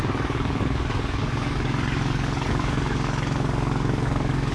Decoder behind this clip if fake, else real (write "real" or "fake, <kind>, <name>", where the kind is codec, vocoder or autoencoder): fake, codec, DAC